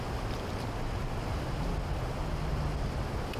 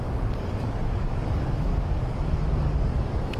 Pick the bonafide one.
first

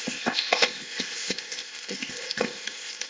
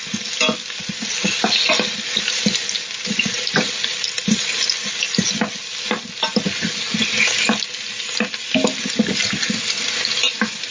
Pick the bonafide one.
second